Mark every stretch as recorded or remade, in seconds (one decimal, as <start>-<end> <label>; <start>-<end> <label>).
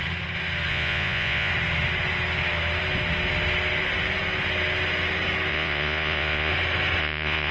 0.0-0.7 recorded; 0.7-1.5 remade; 1.5-5.5 recorded; 5.5-6.5 remade; 6.5-7.0 recorded; 7.0-7.5 remade